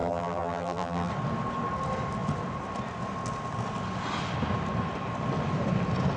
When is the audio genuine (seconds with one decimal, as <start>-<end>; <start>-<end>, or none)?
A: 1.1-6.2